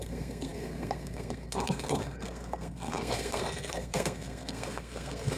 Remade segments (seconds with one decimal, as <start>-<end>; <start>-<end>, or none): 0.0-5.4